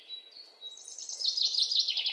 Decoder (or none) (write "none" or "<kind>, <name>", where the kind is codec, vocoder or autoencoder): none